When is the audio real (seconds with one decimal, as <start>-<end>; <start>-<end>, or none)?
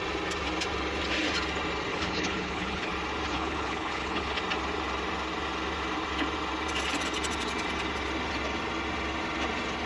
0.0-1.9; 2.9-3.3; 4.4-9.9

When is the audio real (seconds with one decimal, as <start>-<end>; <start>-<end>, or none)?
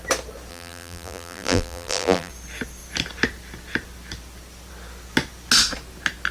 0.0-0.5; 2.3-6.3